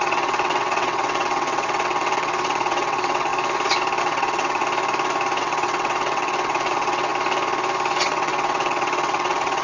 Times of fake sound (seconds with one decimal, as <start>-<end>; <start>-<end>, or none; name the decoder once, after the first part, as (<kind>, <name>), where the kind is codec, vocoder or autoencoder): 0.0-3.3 (vocoder, WaveNeXt); 4.0-4.6; 5.4-7.1; 8.0-9.6